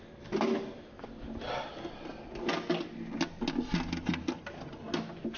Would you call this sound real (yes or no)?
yes